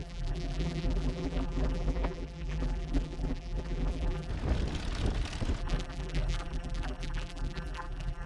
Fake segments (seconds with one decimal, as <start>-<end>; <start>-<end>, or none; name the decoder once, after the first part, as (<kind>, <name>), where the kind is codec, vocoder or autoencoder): 0.0-4.3 (vocoder, BigVGAN v2); 5.6-8.3